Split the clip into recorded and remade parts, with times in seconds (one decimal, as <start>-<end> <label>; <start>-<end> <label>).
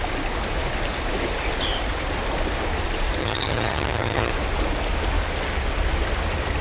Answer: 0.0-3.2 recorded; 3.2-4.3 remade; 4.3-6.6 recorded